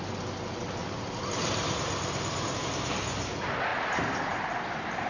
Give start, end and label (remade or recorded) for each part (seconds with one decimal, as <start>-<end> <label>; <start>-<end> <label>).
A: 0.0-0.8 recorded; 0.8-3.0 remade; 3.0-3.7 recorded; 3.7-5.1 remade